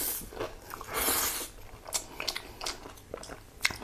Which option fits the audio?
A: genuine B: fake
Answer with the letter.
A